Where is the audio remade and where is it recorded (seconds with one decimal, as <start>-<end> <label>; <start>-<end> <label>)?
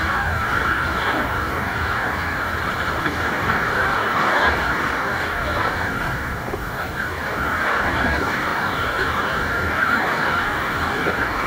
0.0-2.5 remade; 2.5-3.0 recorded; 3.0-11.5 remade